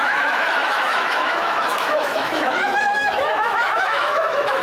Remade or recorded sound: remade